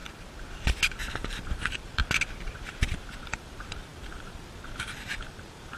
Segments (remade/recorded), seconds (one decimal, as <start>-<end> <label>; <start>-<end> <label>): 0.0-1.1 recorded; 1.1-2.0 remade; 2.0-3.2 recorded; 3.2-5.8 remade